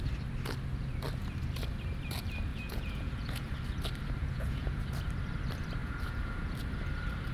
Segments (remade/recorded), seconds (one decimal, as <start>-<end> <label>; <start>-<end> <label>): 0.0-2.5 recorded; 2.5-3.5 remade; 3.5-4.2 recorded; 4.2-4.8 remade; 4.8-5.8 recorded; 5.8-6.5 remade; 6.5-7.3 recorded